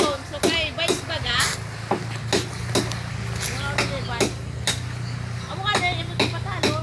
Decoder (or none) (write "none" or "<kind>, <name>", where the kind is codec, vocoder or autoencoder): none